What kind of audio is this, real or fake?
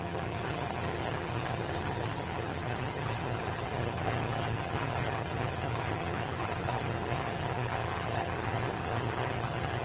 fake